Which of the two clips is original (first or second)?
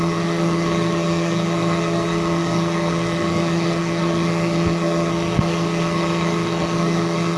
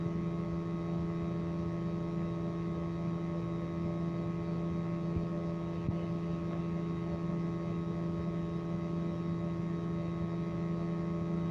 second